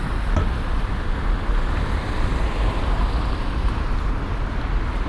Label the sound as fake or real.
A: fake